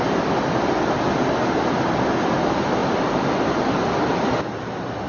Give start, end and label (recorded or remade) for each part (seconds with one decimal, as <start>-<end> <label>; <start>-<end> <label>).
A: 0.0-5.1 recorded